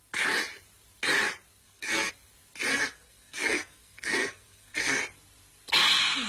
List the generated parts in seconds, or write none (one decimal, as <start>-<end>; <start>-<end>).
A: 1.6-2.1; 2.7-5.0